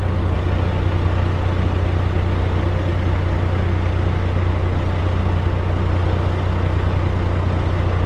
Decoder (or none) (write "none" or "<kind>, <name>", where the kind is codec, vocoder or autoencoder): none